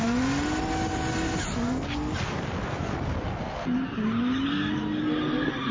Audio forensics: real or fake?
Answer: real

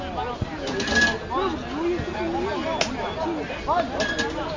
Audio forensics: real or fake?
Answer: real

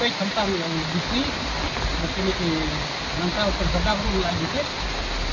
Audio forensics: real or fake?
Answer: real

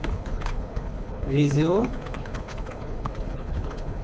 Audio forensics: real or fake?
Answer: fake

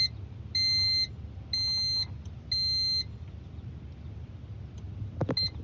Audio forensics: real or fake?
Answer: real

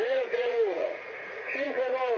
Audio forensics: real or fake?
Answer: fake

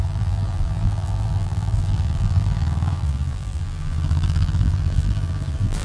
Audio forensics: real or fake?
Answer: fake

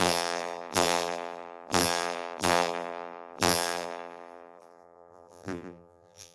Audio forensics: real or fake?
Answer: fake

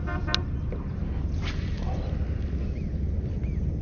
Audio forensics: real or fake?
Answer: real